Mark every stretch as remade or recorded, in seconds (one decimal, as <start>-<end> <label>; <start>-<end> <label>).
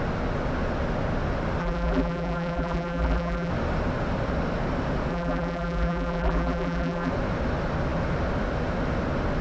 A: 0.0-1.6 recorded; 1.6-3.5 remade; 3.5-5.1 recorded; 5.1-7.1 remade; 7.1-9.4 recorded